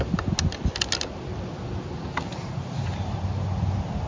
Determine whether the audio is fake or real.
real